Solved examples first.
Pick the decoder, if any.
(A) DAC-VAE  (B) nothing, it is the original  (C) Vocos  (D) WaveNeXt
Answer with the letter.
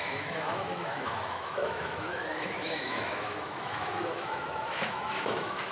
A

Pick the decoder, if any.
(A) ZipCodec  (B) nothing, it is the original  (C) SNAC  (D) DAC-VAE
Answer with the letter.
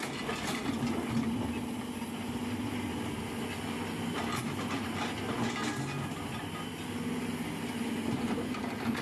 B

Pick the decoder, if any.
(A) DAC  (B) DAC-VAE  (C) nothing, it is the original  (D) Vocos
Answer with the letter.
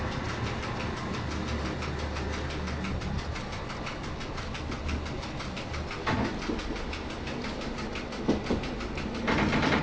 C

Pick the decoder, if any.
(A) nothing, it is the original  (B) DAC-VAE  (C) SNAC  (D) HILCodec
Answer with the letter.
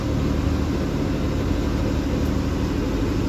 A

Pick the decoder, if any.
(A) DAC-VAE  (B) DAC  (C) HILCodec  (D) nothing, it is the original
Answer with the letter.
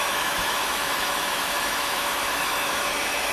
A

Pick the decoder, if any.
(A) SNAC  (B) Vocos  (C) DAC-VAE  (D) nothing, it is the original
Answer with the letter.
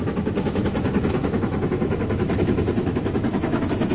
C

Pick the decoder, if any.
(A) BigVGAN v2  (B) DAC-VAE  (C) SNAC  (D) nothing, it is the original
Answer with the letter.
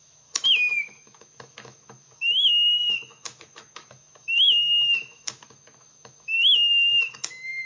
B